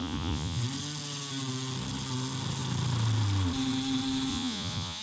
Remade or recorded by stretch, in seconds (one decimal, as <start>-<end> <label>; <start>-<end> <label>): 0.0-0.6 remade; 0.6-4.3 recorded; 4.3-5.0 remade